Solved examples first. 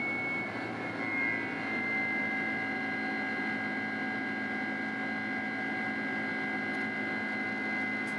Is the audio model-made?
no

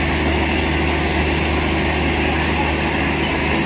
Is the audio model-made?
no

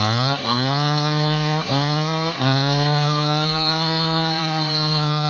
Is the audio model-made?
yes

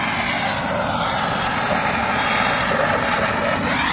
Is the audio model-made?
no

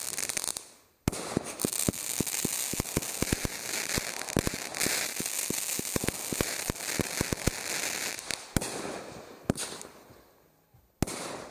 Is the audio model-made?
no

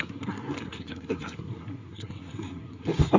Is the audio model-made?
yes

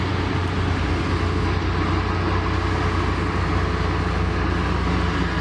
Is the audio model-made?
no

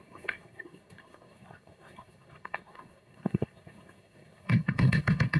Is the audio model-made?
yes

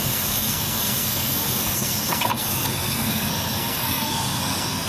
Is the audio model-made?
yes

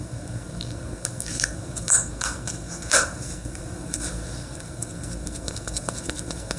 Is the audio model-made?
yes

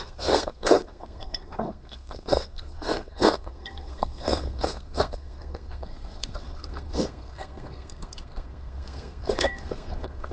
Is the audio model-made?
yes